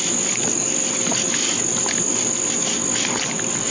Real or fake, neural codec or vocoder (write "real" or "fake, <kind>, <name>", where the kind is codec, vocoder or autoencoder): real